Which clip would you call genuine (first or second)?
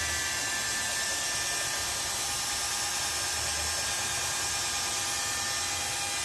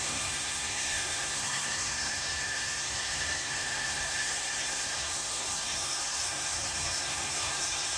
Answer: first